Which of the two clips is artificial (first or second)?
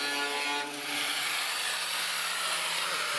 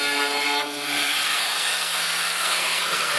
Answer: second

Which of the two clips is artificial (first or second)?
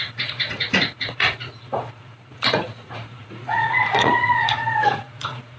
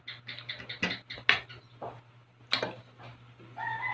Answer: first